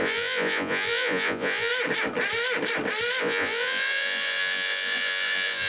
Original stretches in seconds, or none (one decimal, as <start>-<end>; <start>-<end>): 1.7-3.2